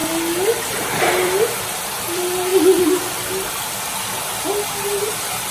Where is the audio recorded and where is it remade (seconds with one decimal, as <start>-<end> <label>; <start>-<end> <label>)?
0.0-0.7 recorded; 0.7-2.5 remade; 2.5-4.8 recorded; 4.8-5.5 remade